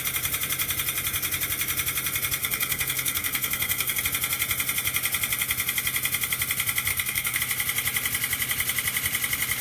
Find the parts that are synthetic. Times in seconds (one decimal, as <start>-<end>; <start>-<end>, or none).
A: 2.4-4.0; 6.9-7.4